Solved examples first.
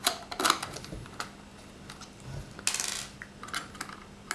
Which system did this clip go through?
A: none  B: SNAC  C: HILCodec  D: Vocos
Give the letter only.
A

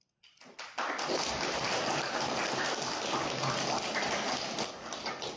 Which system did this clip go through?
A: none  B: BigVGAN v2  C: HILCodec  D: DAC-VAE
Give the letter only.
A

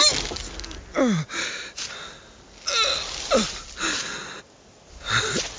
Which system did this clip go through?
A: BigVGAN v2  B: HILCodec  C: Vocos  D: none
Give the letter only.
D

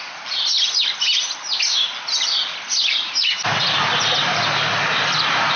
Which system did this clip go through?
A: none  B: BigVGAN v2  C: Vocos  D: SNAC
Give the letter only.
A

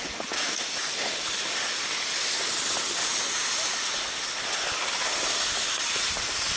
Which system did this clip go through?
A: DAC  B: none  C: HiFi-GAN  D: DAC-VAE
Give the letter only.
B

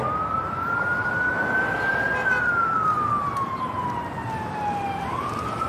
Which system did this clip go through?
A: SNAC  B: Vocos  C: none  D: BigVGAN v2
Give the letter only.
C